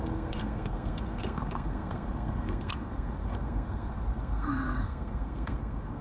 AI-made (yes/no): yes